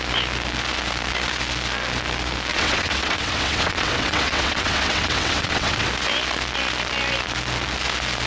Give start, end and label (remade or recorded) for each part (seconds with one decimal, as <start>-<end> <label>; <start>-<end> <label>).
0.0-2.5 recorded; 2.5-5.9 remade; 5.9-8.3 recorded